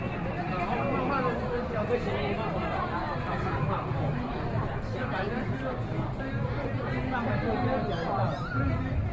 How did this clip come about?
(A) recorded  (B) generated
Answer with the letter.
A